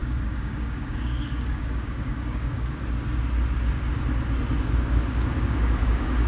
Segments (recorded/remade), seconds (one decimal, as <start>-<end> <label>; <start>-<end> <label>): 0.0-2.8 remade; 2.8-5.0 recorded; 5.0-6.3 remade